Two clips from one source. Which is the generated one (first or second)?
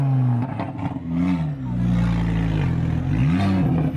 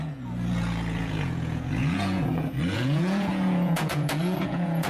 second